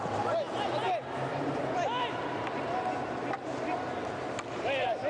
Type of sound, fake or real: real